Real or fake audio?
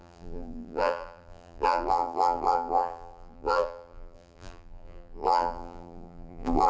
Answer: fake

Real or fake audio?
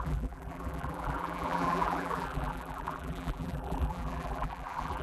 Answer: fake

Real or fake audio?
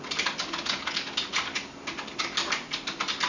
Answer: real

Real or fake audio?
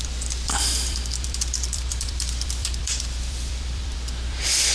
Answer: fake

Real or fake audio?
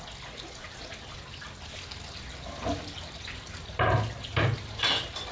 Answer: real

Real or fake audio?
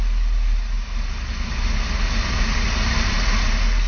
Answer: real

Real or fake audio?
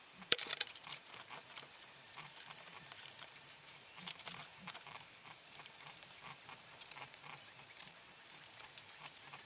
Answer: fake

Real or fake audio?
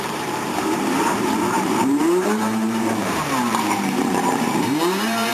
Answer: fake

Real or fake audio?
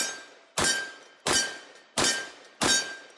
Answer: real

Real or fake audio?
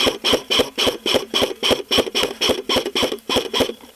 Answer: fake